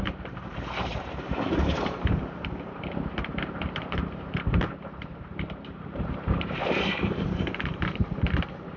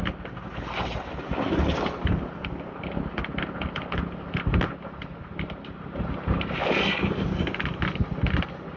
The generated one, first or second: first